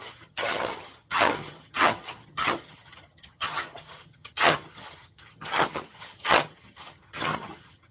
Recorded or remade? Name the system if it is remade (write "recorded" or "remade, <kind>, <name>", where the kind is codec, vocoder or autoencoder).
remade, vocoder, HiFi-GAN